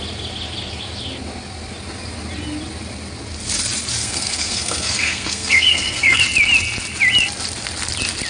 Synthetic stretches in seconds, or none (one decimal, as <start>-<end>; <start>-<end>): 4.0-6.2